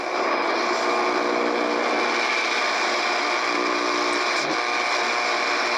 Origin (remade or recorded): recorded